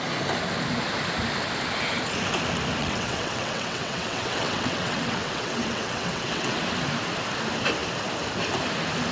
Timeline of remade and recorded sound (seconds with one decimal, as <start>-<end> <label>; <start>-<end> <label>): 0.0-2.8 recorded; 2.8-6.6 remade; 6.6-9.1 recorded